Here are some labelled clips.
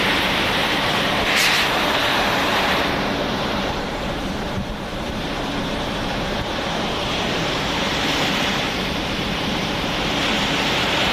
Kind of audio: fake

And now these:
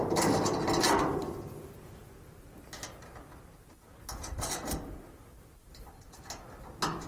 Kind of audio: real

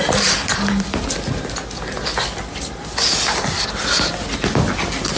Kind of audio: real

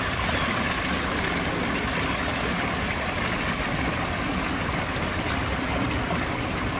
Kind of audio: real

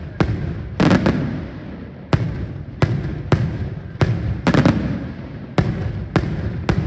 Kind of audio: real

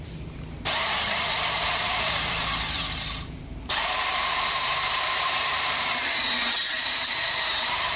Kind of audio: fake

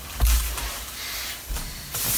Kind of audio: real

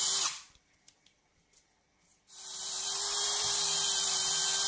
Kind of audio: fake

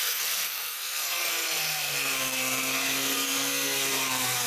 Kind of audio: fake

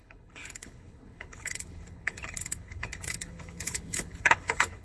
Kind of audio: fake